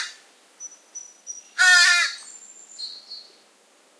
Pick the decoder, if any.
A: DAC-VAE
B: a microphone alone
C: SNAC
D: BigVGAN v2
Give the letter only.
B